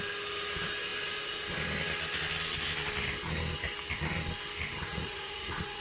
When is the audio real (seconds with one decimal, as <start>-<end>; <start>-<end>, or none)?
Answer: 0.0-4.9